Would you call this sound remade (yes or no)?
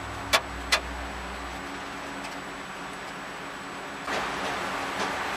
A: no